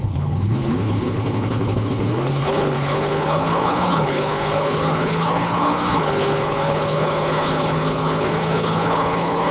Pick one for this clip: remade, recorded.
remade